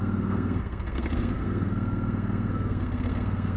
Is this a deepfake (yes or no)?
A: yes